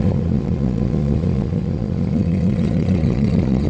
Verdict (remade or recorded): remade